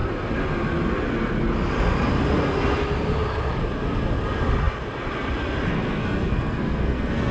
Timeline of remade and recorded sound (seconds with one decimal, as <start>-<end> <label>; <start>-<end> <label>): 0.0-5.7 recorded; 5.7-7.3 remade